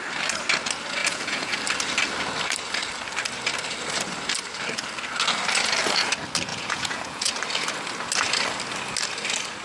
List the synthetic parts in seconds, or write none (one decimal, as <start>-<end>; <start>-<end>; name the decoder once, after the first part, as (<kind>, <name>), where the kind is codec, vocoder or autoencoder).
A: 1.0-1.6 (vocoder, Vocos); 6.5-7.3